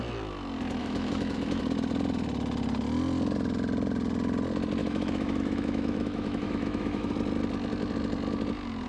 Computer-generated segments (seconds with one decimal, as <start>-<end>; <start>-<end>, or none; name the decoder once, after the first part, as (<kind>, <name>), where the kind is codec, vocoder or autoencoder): 0.8-1.6 (autoencoder, DAC-VAE); 4.8-7.1